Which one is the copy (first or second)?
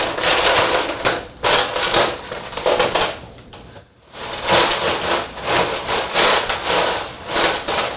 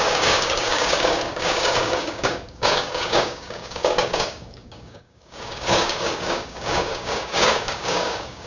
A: second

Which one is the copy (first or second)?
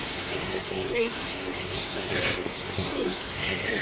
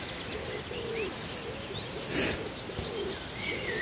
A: first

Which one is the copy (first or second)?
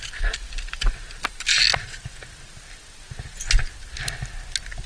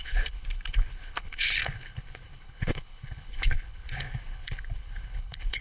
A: second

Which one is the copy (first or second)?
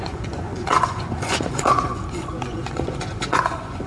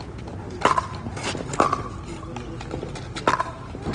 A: first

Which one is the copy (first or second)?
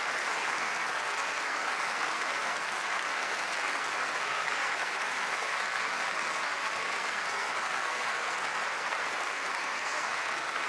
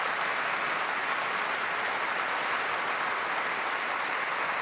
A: first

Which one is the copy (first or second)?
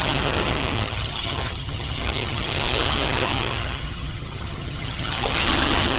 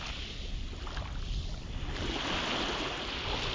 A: first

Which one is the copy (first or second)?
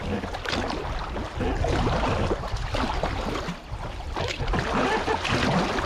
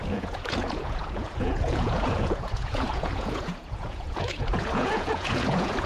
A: second